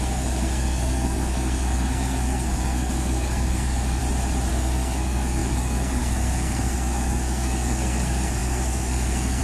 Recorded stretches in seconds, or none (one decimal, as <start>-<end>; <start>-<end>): 4.0-4.5

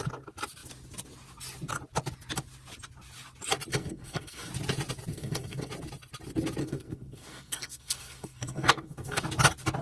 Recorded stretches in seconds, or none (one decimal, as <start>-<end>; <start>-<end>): 0.0-3.7; 4.5-5.1; 5.7-6.6; 9.2-9.8

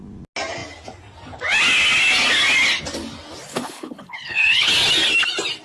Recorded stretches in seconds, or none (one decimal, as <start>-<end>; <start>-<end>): 0.0-3.5; 4.7-5.6

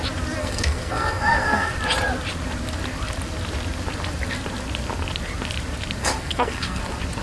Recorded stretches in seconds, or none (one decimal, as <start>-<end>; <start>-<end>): 0.0-0.4; 1.7-6.0; 6.8-7.2

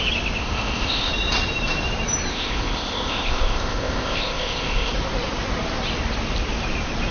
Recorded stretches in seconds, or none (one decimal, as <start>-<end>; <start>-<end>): 0.0-0.4; 1.1-2.3; 4.9-7.1

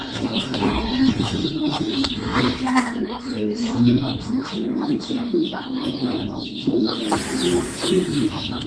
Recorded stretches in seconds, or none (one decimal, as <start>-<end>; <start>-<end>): 7.0-7.6